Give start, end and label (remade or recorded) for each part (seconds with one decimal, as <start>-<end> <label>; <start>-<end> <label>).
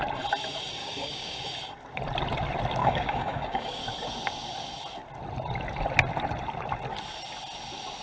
0.0-0.8 recorded; 0.8-1.4 remade; 1.4-2.8 recorded; 2.8-3.8 remade; 3.8-8.0 recorded